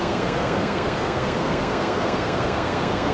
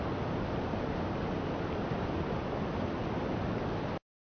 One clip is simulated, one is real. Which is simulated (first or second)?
first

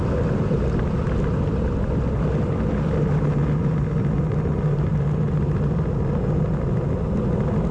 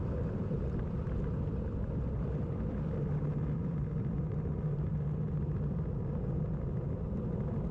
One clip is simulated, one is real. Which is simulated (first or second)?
second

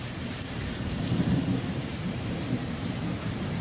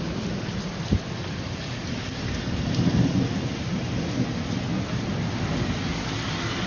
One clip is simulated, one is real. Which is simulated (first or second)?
first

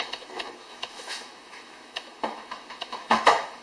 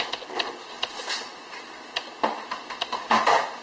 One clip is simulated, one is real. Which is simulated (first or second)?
first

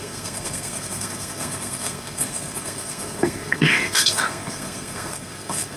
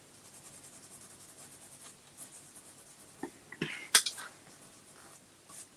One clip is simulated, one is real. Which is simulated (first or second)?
first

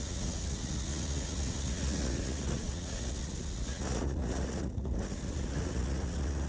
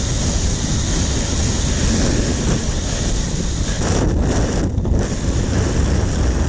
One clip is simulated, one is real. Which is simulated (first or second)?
first